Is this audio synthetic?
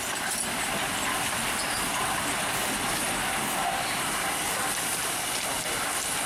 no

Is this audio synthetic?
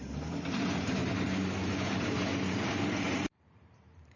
yes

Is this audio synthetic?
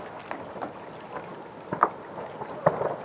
no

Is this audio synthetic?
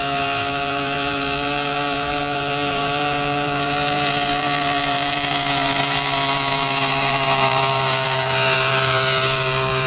yes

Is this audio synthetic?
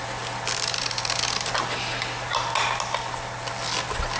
no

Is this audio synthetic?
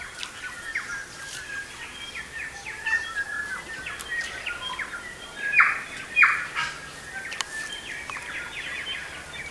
yes